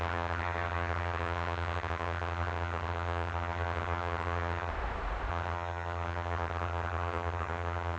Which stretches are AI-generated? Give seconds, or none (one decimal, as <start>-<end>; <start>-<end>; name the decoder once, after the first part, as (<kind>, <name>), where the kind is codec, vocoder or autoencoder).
0.0-4.7 (vocoder, HiFi-GAN); 5.3-8.0